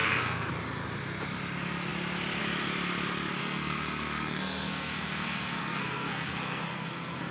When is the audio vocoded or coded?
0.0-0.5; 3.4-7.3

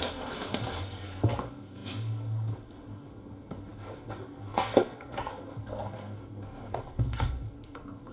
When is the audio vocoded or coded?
0.0-8.1

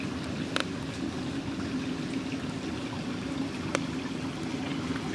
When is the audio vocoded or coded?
none

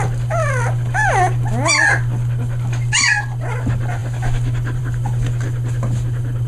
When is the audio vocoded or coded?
none

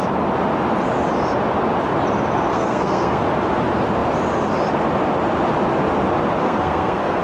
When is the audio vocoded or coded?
2.5-3.2; 6.4-7.2

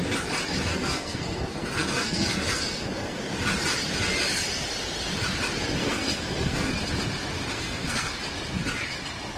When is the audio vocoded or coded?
0.7-3.2; 5.8-6.7; 7.5-8.1

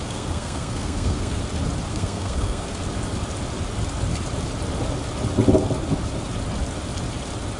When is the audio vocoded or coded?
0.0-1.4; 1.9-2.8

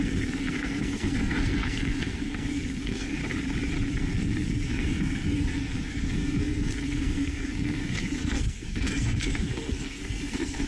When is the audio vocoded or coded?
0.0-3.2; 3.9-10.7